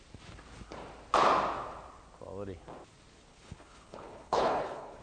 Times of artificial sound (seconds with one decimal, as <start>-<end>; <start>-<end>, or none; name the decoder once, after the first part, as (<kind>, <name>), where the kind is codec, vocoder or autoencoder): 3.3-5.0 (codec, HILCodec)